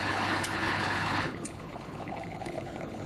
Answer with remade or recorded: remade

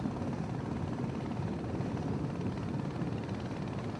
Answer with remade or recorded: recorded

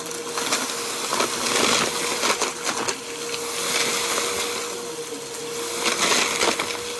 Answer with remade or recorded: recorded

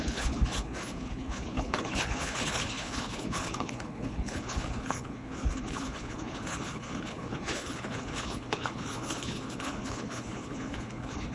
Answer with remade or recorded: remade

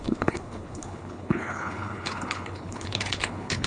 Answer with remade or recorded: remade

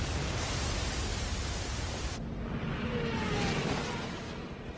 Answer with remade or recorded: recorded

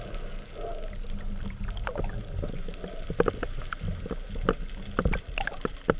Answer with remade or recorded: recorded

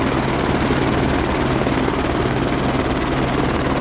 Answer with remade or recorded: recorded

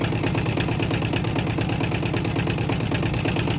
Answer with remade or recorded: recorded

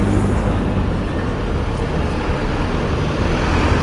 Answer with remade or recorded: recorded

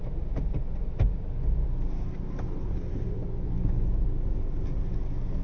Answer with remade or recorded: recorded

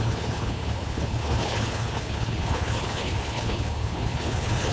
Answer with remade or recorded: remade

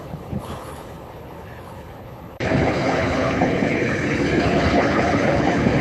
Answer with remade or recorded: remade